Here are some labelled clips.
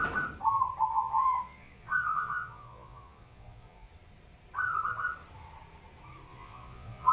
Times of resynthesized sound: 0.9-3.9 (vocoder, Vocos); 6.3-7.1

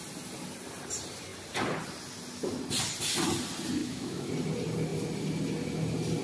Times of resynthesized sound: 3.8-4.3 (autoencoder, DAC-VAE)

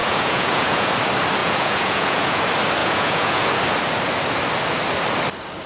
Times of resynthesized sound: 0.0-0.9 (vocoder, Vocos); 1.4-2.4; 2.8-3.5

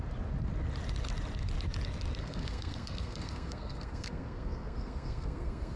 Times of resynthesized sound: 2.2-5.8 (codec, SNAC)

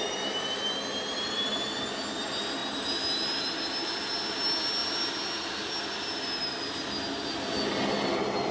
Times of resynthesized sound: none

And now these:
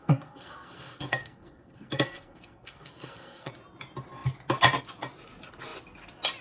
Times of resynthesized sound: 0.0-3.5 (codec, SNAC)

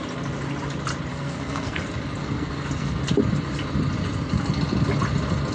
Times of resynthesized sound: 1.1-1.8 (codec, SNAC); 2.2-3.0